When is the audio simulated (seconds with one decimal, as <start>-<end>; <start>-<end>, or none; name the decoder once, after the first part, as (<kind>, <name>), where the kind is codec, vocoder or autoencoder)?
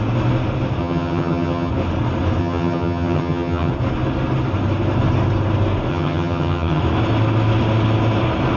0.8-1.7 (vocoder, HiFi-GAN); 2.4-3.7; 5.9-6.8